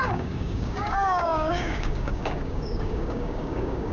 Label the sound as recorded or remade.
remade